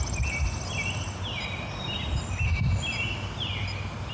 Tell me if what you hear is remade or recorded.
recorded